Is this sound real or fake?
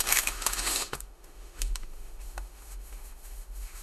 fake